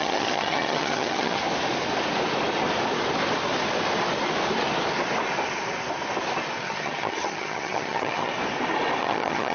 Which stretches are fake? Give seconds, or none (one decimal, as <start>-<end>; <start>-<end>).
0.0-1.4; 6.6-8.3; 9.0-9.5